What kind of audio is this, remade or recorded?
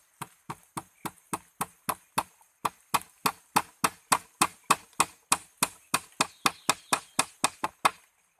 recorded